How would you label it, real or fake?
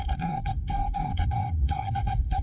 fake